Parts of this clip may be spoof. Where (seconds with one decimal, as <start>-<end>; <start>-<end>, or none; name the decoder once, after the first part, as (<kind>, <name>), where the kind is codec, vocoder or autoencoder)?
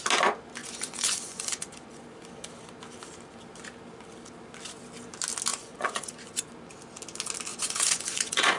0.6-2.0 (vocoder, Vocos); 5.5-6.4; 7.5-8.6